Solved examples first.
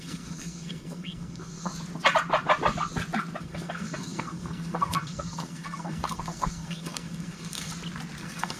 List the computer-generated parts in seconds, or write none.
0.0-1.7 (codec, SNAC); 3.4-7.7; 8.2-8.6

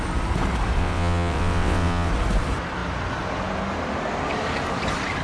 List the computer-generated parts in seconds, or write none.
0.8-2.1 (vocoder, WaveNeXt)

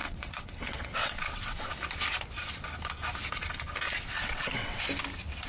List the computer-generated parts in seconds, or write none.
0.0-1.7 (vocoder, WaveNeXt); 4.3-4.8

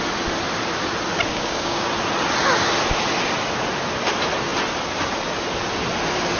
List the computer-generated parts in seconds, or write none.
1.3-1.9 (codec, DAC)

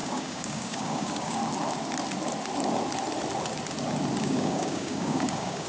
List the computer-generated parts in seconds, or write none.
0.0-1.4 (codec, DAC); 4.2-5.7

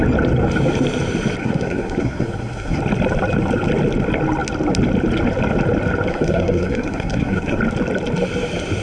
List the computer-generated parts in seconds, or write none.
1.4-2.8 (codec, SNAC); 6.1-7.6

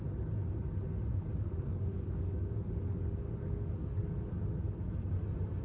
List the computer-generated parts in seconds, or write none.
1.1-4.5 (codec, DAC)

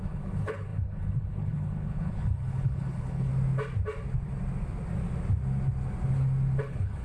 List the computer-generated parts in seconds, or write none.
0.0-3.3 (codec, HILCodec); 6.6-7.0